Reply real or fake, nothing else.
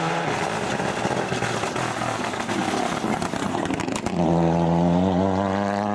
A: real